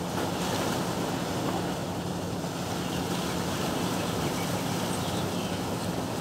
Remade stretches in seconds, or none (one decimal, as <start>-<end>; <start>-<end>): none